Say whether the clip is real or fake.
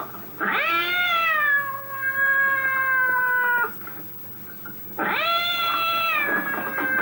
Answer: real